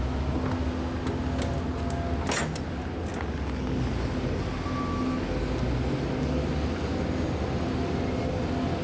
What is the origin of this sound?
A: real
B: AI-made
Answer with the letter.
A